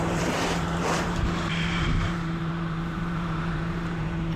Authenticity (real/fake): fake